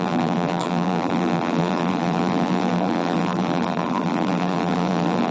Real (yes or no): no